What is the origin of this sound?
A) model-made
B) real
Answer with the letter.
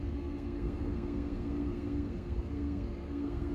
A